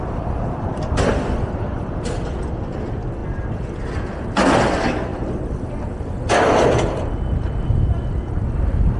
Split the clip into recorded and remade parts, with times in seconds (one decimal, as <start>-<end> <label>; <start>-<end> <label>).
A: 0.0-9.0 recorded